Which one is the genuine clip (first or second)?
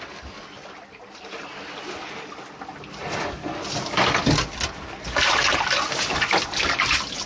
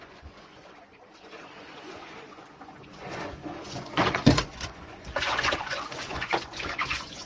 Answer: first